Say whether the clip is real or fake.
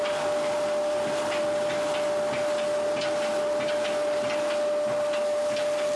real